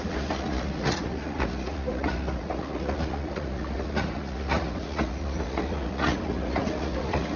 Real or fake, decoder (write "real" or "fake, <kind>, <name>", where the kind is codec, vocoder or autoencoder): fake, vocoder, Vocos